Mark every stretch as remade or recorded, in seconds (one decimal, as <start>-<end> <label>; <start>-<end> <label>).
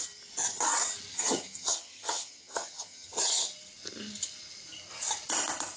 0.0-1.1 recorded; 1.1-3.2 remade; 3.2-5.8 recorded